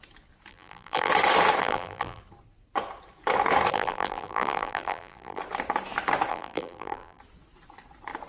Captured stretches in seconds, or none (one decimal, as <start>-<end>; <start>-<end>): 0.0-0.5; 1.1-1.6; 2.2-3.7; 5.4-6.3; 7.2-8.3